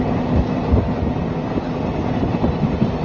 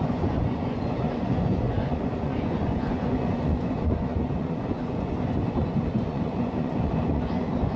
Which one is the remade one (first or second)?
second